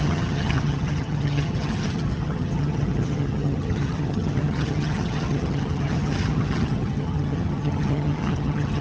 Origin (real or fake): fake